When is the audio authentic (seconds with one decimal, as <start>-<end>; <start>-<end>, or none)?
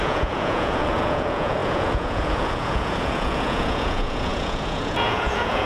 none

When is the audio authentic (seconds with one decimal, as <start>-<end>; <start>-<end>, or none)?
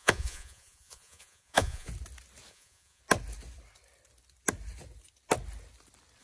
1.9-2.5; 3.0-6.2